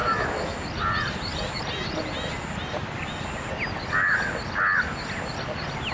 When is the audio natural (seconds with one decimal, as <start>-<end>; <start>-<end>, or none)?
0.6-5.9